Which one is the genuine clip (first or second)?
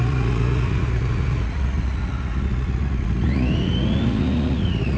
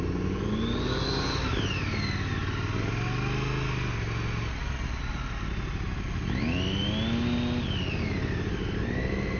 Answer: second